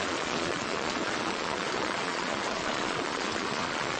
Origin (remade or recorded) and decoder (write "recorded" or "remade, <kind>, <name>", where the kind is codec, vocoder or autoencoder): remade, vocoder, Vocos